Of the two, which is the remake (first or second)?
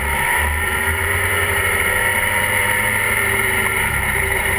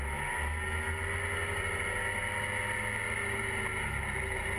first